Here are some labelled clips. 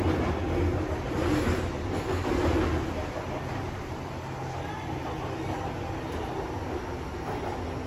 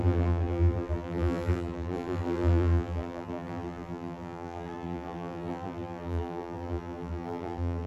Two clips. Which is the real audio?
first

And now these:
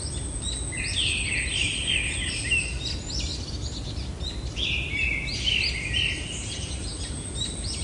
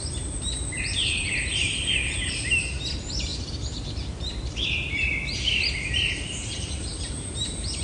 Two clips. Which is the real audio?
first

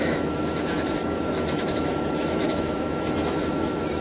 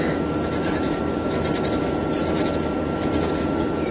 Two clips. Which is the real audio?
second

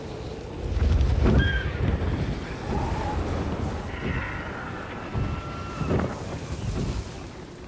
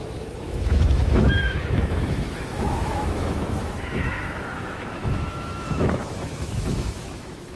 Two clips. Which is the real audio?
first